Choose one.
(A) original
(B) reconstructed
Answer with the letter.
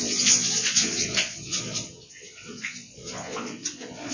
B